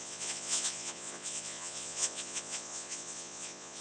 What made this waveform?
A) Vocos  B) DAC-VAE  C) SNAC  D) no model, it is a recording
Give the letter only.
A